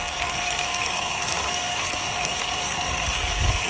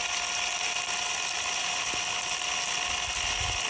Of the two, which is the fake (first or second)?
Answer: first